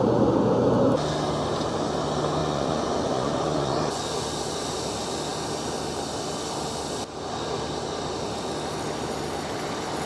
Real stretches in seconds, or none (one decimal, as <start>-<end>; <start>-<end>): 0.0-2.4; 4.0-10.1

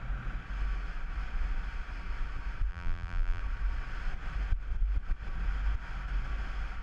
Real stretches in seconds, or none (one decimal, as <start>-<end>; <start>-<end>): 0.0-2.7; 3.4-6.8

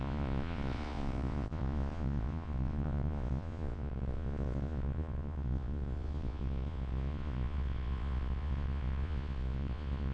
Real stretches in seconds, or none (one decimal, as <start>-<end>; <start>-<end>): none

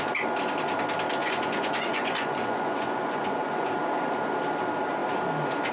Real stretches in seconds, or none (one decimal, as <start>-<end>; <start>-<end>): 0.0-1.2; 3.7-5.7

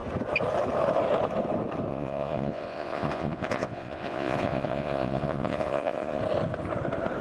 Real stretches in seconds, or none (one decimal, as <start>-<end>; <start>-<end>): 0.0-1.9; 6.2-7.2

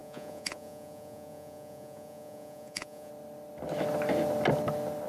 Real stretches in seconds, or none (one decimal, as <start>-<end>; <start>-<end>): 3.1-5.1

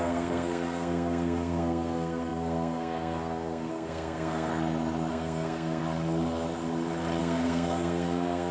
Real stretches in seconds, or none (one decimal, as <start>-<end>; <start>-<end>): 4.5-5.1; 5.8-7.2

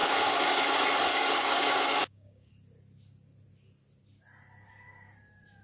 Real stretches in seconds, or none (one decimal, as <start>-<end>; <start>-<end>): 0.6-1.1; 2.5-5.6